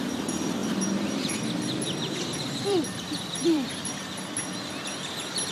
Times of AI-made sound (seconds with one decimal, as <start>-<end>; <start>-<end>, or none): 0.6-3.8